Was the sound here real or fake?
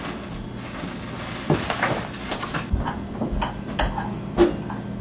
real